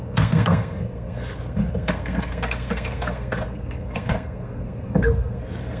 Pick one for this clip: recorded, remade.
remade